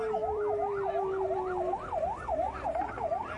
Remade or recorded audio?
remade